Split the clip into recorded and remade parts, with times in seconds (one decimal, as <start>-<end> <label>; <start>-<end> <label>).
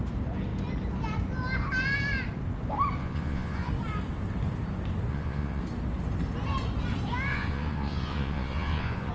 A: 0.0-3.0 recorded; 3.0-3.7 remade; 3.7-5.1 recorded; 5.1-5.6 remade; 5.6-7.3 recorded; 7.3-9.1 remade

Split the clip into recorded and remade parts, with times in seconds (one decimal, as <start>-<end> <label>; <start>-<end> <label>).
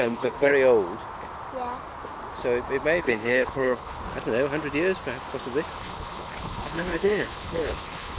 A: 0.0-0.5 remade; 0.5-3.0 recorded; 3.0-4.0 remade; 4.0-5.8 recorded; 5.8-8.2 remade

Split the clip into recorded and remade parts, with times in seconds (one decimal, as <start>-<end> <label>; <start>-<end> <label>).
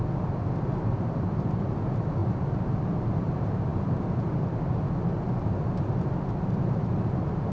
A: 0.0-7.5 recorded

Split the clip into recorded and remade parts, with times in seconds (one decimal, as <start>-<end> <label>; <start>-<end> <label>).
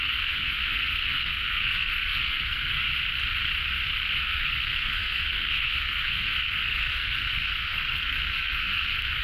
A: 0.0-2.8 remade; 2.8-4.2 recorded; 4.2-9.2 remade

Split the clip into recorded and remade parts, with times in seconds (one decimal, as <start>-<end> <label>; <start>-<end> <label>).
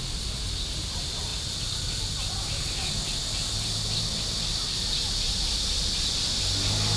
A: 0.0-7.0 recorded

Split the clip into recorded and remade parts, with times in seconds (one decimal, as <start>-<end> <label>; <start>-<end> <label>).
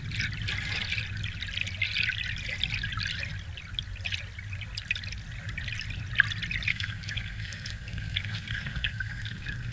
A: 0.0-6.7 recorded; 6.7-9.7 remade